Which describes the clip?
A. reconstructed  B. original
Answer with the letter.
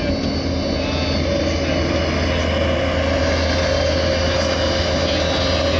B